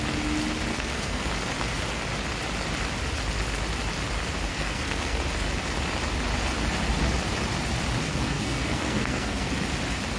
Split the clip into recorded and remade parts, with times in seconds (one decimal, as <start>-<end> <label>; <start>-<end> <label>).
0.0-0.7 recorded; 0.7-1.3 remade; 1.3-4.5 recorded; 4.5-5.2 remade; 5.2-8.1 recorded; 8.1-9.5 remade; 9.5-10.2 recorded